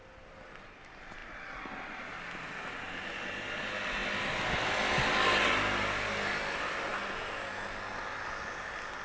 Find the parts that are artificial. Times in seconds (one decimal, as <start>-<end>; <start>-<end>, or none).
none